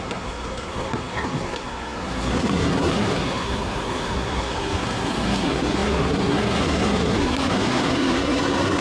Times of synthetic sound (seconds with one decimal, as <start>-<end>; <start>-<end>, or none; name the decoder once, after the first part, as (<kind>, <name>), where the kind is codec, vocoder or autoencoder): 0.0-8.8 (codec, SNAC)